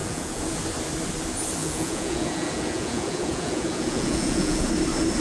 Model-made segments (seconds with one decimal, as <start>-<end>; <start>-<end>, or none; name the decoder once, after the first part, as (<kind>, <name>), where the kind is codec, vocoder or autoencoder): 0.0-0.6 (vocoder, Vocos); 1.6-4.7